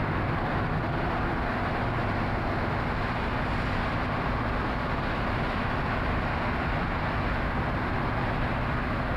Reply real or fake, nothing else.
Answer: real